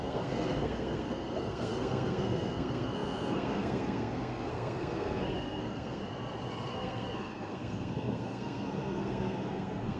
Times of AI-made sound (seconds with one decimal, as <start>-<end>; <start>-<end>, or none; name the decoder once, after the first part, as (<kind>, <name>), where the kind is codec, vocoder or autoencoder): 0.0-6.0 (codec, SNAC); 6.7-10.0